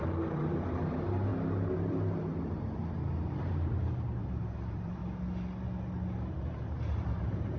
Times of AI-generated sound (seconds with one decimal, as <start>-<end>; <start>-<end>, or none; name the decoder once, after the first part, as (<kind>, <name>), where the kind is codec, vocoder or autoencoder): 0.0-1.3 (vocoder, BigVGAN v2); 1.9-2.8; 3.4-5.0; 6.3-7.6